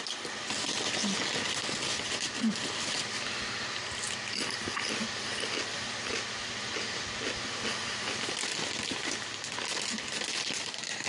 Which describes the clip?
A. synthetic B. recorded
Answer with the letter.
B